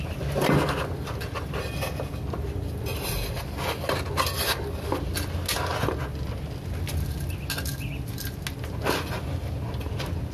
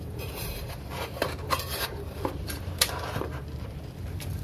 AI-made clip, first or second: second